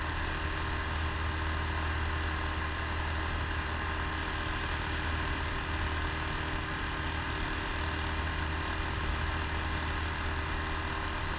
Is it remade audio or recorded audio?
recorded